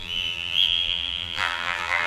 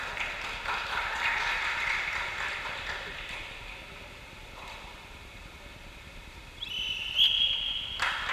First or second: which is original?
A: second